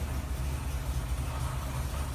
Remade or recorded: recorded